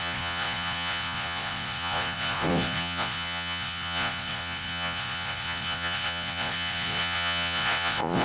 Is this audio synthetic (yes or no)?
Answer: yes